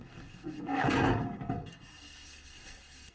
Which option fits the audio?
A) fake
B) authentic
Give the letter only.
A